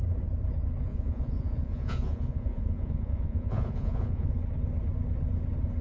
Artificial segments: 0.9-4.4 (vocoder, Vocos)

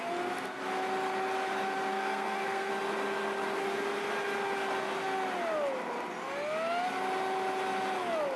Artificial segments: 1.9-2.7 (codec, SNAC)

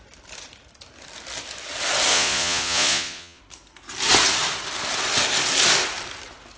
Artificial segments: 2.1-3.4 (vocoder, Vocos)

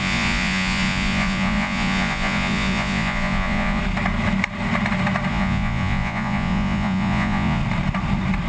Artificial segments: 0.0-3.8 (vocoder, Vocos); 5.3-7.6

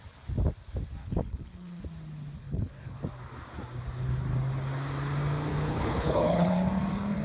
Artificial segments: 1.0-1.8 (codec, HILCodec); 2.4-3.0; 5.5-6.5

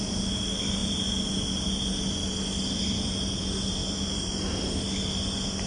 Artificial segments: 3.8-4.3 (vocoder, BigVGAN v2)

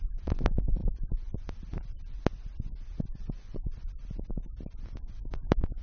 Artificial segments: 3.2-3.9 (vocoder, Vocos)

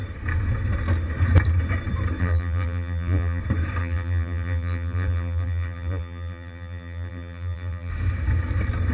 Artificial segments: 2.2-3.4 (vocoder, BigVGAN v2); 3.8-7.9